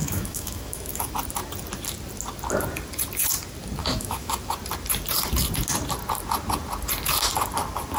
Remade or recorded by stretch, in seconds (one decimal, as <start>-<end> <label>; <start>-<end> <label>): 0.0-1.1 remade; 1.1-3.8 recorded; 3.8-4.3 remade; 4.3-8.0 recorded